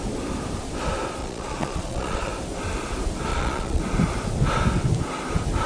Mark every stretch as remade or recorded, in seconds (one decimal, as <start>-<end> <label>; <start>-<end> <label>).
0.0-1.2 recorded; 1.2-2.3 remade; 2.3-3.3 recorded; 3.3-3.8 remade; 3.8-5.7 recorded